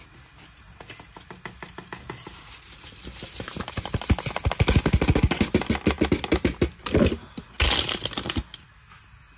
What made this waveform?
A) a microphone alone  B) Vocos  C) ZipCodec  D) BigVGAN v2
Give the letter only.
A